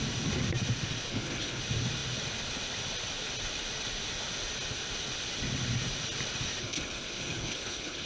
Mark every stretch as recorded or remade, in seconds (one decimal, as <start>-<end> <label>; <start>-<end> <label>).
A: 0.0-1.1 recorded; 1.1-1.6 remade; 1.6-6.6 recorded; 6.6-8.1 remade